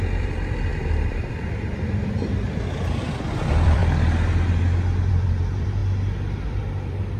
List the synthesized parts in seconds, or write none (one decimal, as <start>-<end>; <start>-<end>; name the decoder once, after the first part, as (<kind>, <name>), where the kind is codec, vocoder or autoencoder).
0.0-3.8 (vocoder, BigVGAN v2); 5.1-5.8; 6.4-7.2